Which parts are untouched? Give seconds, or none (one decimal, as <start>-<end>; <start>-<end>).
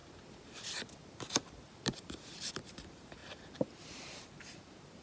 none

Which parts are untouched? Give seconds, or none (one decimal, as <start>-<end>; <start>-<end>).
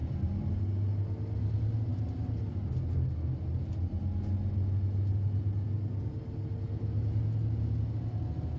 0.5-8.6